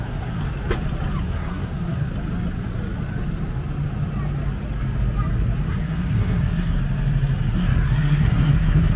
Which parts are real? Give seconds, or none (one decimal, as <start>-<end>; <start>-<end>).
0.4-1.2; 2.1-5.7; 6.8-7.5